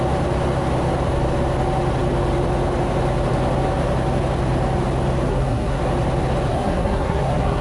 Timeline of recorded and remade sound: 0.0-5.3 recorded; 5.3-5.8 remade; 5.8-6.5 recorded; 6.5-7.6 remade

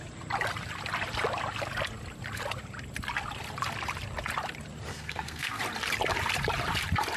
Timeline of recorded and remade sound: 0.0-4.9 recorded; 4.9-5.6 remade; 5.6-7.2 recorded